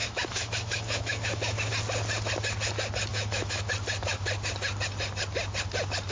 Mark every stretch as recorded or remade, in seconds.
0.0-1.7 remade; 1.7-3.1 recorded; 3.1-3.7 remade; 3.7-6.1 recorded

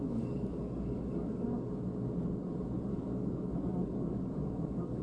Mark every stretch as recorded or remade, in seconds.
0.0-1.9 remade; 1.9-2.9 recorded; 2.9-5.0 remade

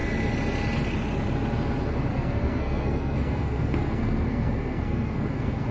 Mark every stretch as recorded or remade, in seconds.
0.0-2.1 recorded; 2.1-5.7 remade

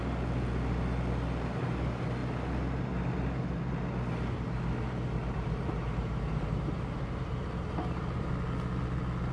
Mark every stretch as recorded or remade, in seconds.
0.0-5.2 recorded; 5.2-8.3 remade; 8.3-9.3 recorded